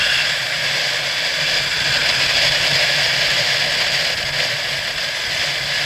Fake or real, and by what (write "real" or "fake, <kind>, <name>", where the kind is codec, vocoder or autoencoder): real